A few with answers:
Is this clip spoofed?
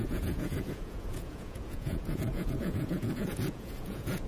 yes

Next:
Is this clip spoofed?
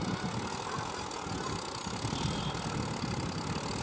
no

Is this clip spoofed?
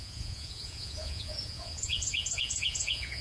yes